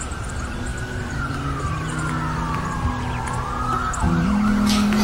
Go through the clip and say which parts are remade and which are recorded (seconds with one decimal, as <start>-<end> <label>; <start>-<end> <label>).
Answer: 0.0-5.0 recorded